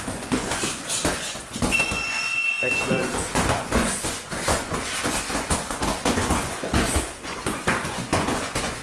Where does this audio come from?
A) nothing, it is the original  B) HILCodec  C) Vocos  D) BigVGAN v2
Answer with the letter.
C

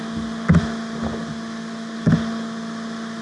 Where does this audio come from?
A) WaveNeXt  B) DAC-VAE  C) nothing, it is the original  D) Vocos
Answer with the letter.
C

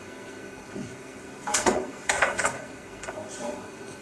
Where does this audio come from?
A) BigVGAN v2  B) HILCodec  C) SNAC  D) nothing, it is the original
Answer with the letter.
C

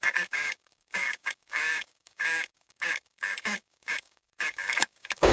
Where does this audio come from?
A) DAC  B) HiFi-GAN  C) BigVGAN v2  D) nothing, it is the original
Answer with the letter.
A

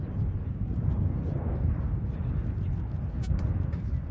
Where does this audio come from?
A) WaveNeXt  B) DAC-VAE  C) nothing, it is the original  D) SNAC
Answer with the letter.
C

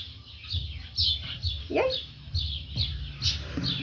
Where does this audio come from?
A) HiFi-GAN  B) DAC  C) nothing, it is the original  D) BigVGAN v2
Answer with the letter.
C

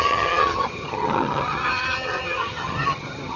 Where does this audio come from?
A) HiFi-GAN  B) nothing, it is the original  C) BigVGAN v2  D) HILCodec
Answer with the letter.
A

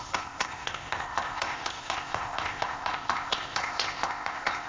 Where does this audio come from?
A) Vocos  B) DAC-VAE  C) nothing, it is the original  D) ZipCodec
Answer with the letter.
D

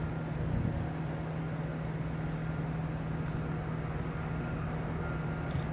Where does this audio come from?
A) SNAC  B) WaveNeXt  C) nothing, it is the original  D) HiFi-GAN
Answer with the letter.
C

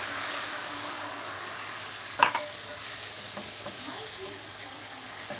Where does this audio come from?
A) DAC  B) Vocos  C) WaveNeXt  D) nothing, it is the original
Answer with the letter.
A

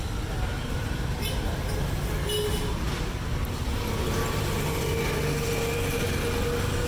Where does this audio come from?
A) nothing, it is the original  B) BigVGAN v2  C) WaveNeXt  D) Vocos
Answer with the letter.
A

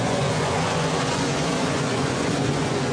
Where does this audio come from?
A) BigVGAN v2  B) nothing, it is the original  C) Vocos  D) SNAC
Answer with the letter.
C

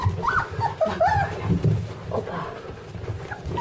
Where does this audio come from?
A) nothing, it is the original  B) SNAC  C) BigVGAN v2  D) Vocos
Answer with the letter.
A